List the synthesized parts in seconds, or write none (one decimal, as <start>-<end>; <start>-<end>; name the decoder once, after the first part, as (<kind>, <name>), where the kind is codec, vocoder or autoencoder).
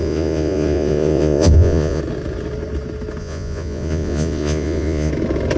0.0-2.0 (vocoder, Vocos); 3.2-5.1